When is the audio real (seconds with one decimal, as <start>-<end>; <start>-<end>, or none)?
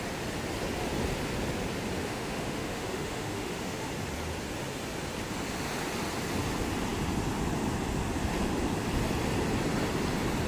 0.0-2.0; 3.9-10.5